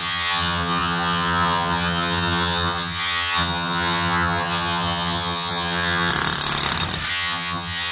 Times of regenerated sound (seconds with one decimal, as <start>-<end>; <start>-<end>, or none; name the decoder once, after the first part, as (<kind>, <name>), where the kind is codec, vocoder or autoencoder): 0.0-6.1 (vocoder, HiFi-GAN); 7.1-7.9